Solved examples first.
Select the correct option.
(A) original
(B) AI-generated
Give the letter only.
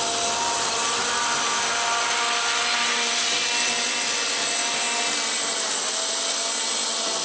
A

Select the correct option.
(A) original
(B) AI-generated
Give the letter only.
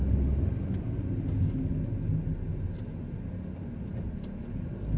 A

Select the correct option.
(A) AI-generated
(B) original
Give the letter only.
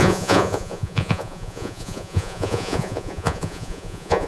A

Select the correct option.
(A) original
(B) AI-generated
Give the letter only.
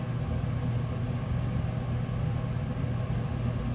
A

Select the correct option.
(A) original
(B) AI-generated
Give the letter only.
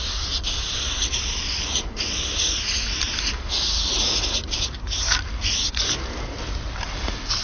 A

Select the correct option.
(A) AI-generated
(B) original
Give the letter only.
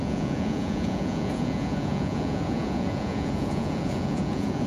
A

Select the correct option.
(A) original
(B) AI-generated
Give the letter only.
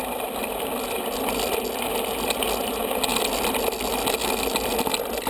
A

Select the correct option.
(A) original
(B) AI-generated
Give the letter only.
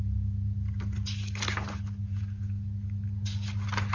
A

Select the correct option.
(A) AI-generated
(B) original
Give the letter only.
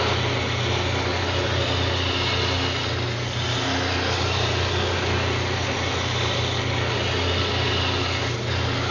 B